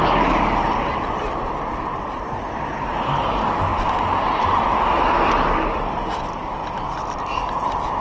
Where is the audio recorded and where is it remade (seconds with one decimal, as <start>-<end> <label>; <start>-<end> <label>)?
0.0-8.0 recorded